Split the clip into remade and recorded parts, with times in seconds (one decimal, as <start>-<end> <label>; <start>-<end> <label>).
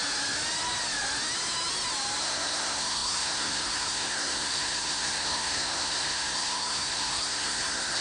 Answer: 0.0-2.2 recorded; 2.2-8.0 remade